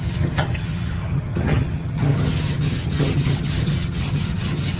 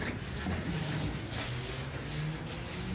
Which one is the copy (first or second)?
first